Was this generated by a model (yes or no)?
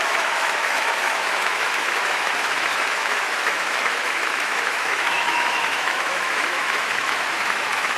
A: yes